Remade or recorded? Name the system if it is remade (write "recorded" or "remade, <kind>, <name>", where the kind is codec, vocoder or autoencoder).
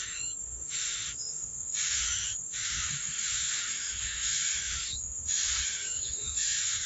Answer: remade, autoencoder, DAC-VAE